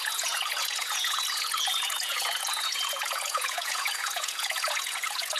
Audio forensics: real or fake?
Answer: fake